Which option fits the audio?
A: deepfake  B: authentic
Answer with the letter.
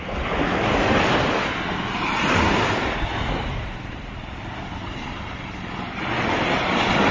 B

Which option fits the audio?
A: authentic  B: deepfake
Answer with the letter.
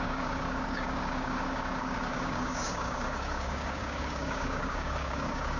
B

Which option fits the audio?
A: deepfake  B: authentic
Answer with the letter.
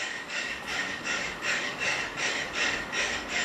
A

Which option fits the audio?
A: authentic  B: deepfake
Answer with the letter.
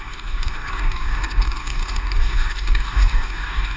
B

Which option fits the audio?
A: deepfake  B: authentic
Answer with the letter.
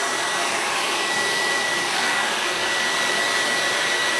A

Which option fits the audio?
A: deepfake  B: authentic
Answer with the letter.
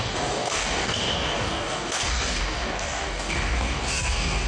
A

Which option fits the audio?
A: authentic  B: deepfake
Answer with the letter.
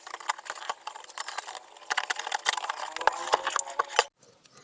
A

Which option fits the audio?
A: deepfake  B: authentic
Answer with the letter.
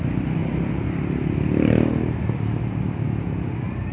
B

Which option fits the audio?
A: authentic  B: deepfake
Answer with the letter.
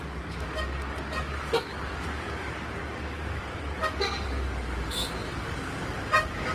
B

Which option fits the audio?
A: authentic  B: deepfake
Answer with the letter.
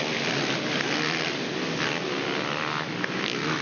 A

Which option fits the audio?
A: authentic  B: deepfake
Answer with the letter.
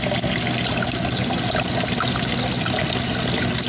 A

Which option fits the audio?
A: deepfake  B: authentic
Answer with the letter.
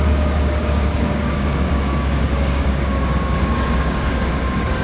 A